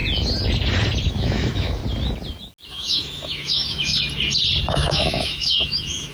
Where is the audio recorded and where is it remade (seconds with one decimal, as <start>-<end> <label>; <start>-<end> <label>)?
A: 0.0-1.1 recorded; 1.1-1.8 remade; 1.8-2.7 recorded; 2.7-3.9 remade; 3.9-4.7 recorded; 4.7-6.1 remade